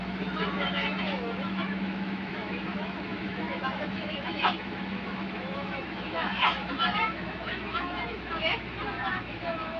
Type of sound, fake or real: fake